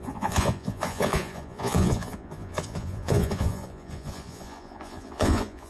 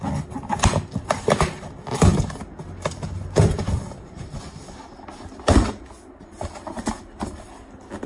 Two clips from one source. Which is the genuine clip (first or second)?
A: second